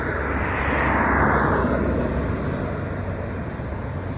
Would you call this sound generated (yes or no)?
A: no